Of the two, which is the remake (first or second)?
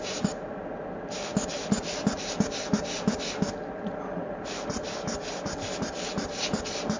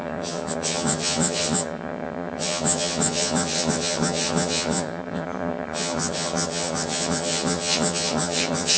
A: second